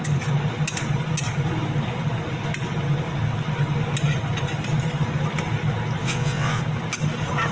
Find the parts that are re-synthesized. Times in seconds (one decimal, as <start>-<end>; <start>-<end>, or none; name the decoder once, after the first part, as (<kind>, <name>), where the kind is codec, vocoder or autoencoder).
6.0-6.6 (vocoder, WaveNeXt)